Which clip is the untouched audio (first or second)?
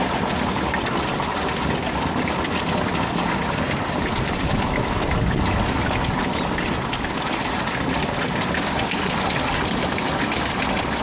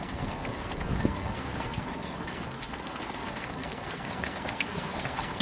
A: first